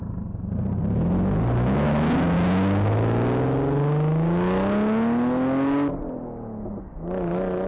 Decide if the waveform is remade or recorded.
recorded